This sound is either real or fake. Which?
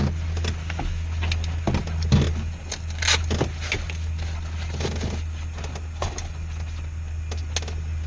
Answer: real